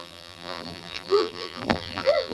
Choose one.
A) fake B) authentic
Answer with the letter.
A